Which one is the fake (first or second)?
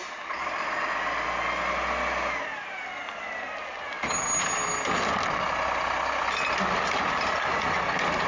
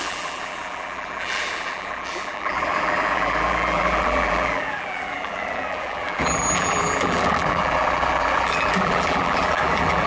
second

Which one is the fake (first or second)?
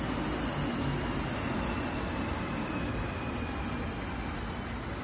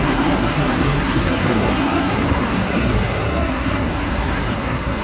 second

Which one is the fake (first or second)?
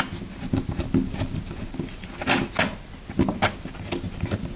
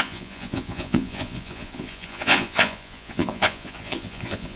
second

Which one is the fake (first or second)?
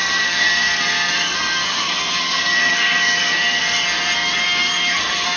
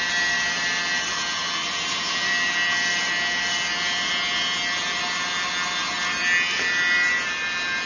first